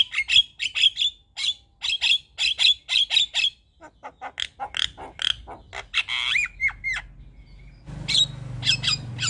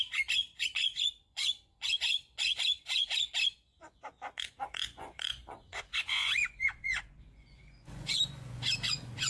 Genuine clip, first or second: first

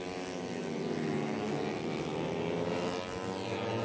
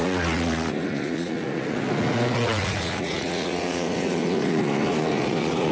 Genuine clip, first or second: first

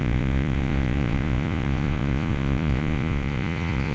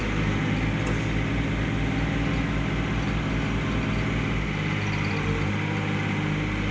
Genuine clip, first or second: second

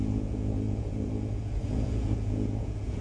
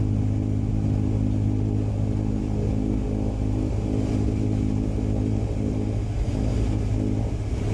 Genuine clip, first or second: second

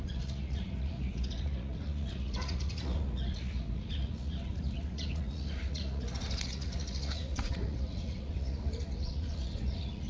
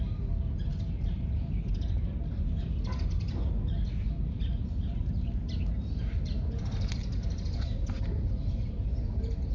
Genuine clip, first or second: second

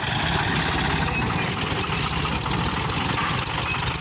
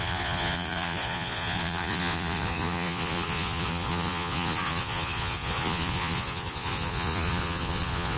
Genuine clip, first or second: first